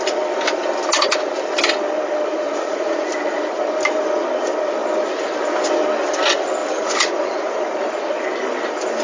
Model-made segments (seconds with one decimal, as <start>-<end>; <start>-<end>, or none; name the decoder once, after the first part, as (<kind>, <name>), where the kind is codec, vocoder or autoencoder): 2.3-3.1 (vocoder, Vocos); 6.6-7.6